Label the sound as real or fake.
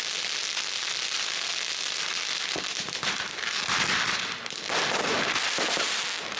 real